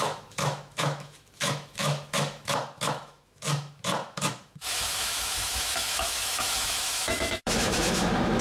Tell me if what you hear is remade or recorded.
remade